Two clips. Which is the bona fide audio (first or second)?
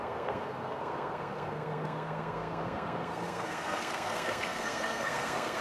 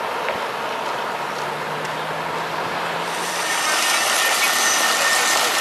second